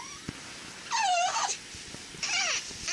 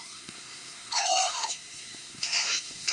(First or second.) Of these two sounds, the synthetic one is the second